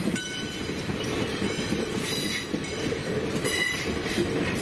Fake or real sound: real